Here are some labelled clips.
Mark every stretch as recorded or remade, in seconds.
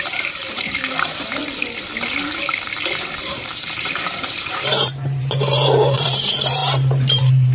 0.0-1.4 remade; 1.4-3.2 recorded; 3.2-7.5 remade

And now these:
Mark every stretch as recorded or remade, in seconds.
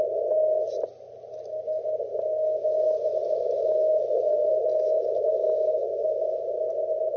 0.0-4.0 recorded; 4.0-4.5 remade; 4.5-7.2 recorded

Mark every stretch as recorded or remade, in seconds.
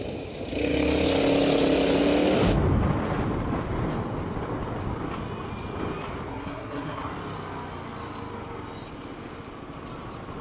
0.0-6.3 recorded; 6.3-7.1 remade; 7.1-10.4 recorded